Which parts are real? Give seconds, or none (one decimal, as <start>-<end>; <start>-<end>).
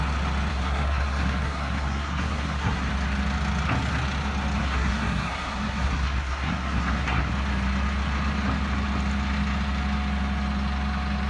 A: 0.0-0.5; 2.9-4.6; 7.3-11.3